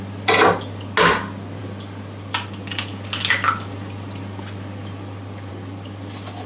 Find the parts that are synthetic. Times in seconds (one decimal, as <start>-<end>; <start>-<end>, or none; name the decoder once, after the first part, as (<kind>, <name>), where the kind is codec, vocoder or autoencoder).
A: none